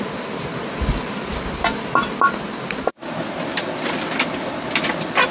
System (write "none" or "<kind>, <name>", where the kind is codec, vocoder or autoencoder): none